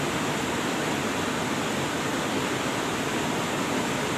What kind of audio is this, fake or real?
real